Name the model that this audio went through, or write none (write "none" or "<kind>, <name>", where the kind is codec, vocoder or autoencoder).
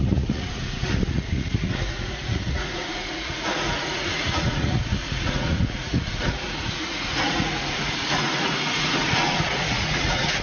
vocoder, Vocos